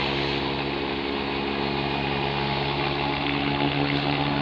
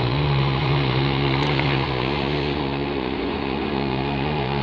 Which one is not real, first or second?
second